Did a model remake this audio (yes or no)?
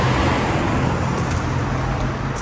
no